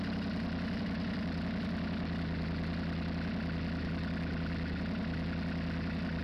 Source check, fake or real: real